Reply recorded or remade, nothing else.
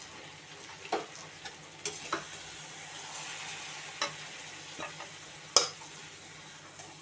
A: recorded